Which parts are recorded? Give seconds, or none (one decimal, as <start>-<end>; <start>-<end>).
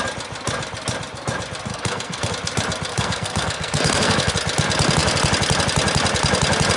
0.0-1.7; 2.3-2.9; 4.3-6.8